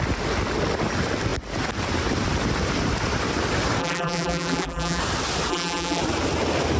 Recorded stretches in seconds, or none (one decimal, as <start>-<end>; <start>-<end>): 0.0-3.8; 5.0-5.5; 6.0-6.8